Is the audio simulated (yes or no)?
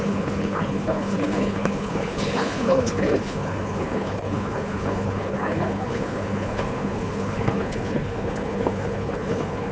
yes